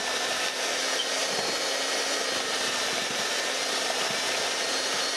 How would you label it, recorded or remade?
recorded